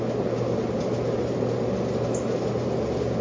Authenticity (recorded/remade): recorded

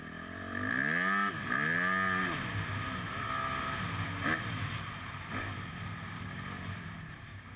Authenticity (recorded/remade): recorded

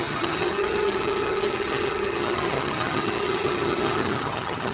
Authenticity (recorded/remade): remade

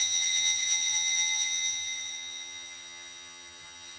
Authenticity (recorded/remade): remade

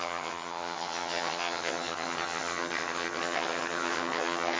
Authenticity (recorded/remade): remade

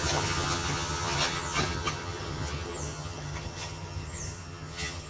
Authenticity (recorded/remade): remade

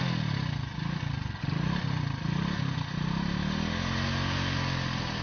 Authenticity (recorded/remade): recorded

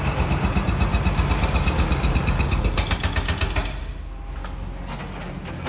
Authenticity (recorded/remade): recorded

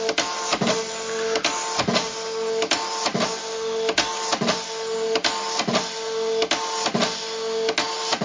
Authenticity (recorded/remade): recorded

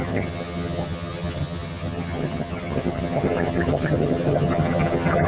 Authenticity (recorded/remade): remade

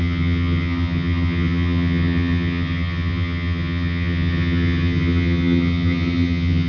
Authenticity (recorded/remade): remade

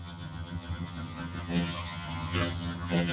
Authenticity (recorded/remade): remade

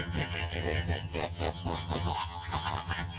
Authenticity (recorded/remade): remade